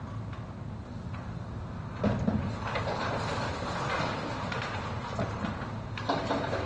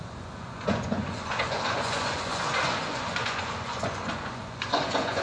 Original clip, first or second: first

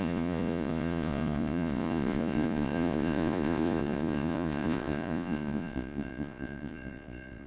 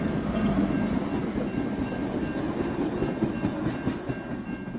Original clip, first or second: second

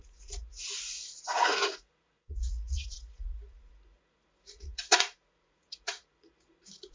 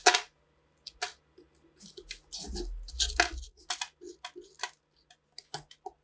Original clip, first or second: second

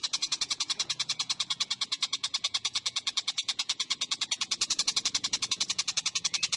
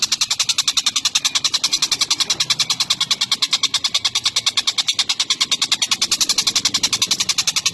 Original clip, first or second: second